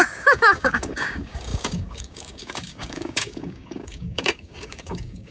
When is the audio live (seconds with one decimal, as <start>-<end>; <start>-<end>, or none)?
none